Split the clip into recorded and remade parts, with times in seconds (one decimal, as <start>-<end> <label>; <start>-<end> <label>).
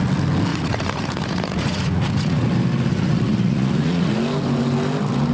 0.0-0.5 recorded; 0.5-2.5 remade; 2.5-2.9 recorded; 2.9-4.1 remade; 4.1-5.3 recorded